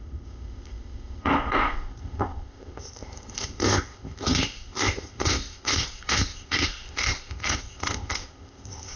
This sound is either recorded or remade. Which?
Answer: remade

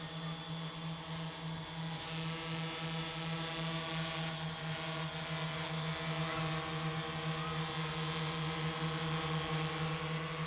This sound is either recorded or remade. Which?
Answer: recorded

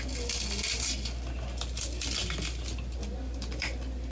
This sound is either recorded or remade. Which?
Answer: recorded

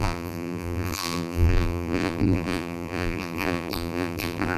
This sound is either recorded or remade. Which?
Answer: remade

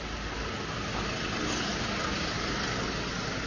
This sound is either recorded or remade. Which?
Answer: recorded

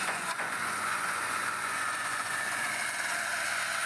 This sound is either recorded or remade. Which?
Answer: remade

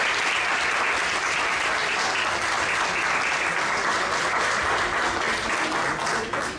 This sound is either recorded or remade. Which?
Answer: recorded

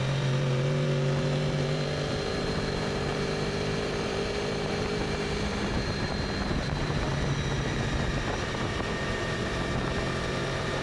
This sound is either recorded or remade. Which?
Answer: remade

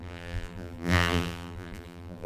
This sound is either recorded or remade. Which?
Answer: remade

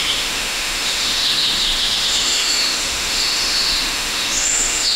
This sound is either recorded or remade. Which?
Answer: remade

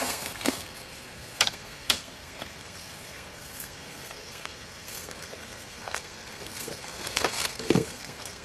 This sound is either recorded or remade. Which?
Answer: remade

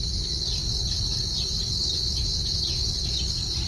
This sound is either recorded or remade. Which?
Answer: recorded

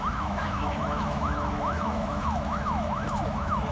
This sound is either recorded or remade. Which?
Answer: remade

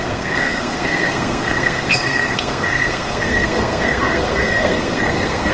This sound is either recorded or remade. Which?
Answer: remade